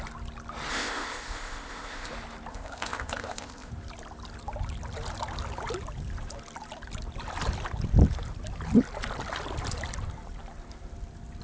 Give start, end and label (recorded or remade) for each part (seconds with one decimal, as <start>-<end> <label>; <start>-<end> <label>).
0.0-0.7 recorded; 0.7-2.1 remade; 2.1-2.5 recorded; 2.5-3.7 remade; 3.7-11.4 recorded